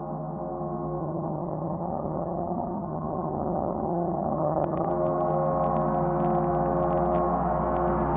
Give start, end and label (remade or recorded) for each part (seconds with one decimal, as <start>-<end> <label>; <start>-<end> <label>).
0.0-1.0 recorded; 1.0-4.9 remade; 4.9-8.2 recorded